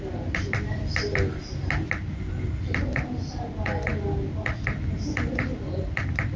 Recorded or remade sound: recorded